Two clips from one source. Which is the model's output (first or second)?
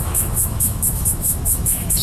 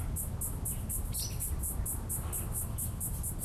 first